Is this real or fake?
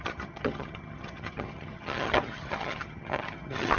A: fake